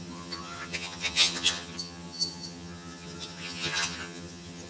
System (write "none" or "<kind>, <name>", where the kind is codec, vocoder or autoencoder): vocoder, HiFi-GAN